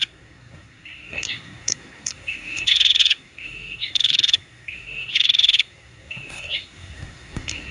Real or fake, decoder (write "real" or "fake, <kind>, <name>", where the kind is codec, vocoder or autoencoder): fake, codec, SNAC